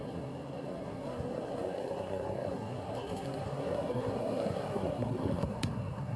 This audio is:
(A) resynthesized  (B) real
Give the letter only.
A